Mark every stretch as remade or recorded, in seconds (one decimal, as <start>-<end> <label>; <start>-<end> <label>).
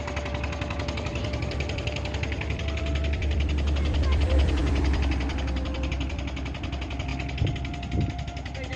0.0-7.1 remade; 7.1-8.8 recorded